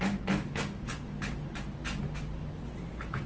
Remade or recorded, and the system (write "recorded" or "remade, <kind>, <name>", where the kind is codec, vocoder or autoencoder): recorded